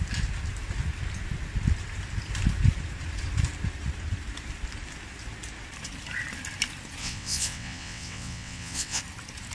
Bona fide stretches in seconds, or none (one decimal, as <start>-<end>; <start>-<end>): 0.0-7.0; 9.0-9.5